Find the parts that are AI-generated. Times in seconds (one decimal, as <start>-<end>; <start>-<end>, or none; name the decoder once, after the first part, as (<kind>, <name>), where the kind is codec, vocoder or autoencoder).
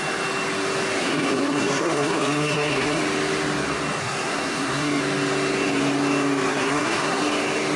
1.0-3.0 (codec, SNAC); 4.0-5.0; 6.5-7.2